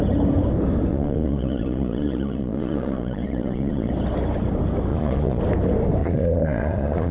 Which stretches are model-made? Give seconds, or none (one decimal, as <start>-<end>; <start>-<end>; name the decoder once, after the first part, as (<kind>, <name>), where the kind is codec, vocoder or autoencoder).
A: 0.9-3.9 (vocoder, Vocos); 4.9-5.4; 6.0-7.1

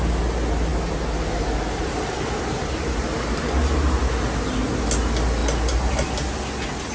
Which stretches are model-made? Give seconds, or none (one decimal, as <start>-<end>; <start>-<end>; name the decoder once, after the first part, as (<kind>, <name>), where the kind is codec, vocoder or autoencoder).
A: none

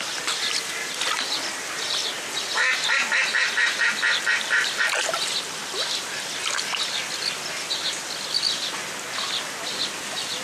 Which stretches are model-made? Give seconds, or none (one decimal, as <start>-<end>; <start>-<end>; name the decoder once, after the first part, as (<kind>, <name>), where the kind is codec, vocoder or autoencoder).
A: none

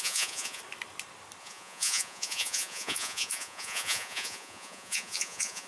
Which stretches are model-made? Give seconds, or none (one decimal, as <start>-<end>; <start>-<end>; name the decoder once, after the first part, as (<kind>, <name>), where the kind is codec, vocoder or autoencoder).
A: 0.0-0.6 (vocoder, Vocos); 1.4-5.7

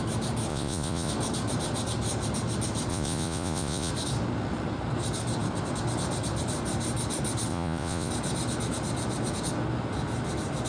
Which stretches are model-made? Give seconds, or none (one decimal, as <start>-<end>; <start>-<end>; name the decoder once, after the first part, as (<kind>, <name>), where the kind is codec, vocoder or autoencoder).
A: 0.5-1.1 (vocoder, Vocos); 2.9-3.9; 7.5-8.1

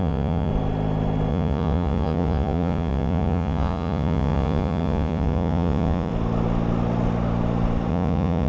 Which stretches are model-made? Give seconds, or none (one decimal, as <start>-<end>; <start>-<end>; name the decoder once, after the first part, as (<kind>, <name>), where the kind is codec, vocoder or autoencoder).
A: 0.0-0.5 (vocoder, Vocos); 1.3-6.1; 7.9-8.5